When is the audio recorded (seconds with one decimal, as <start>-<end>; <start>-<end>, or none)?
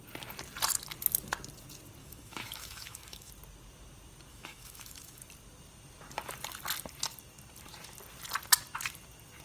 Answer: 0.0-2.0; 3.3-4.3; 5.2-9.4